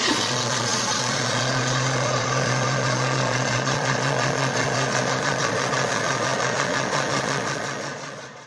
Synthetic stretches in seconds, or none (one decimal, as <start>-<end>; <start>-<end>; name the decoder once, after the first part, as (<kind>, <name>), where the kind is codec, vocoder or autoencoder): 0.0-8.5 (vocoder, Vocos)